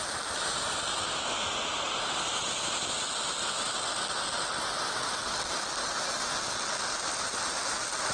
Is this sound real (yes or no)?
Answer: yes